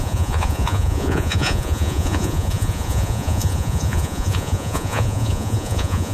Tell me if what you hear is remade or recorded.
remade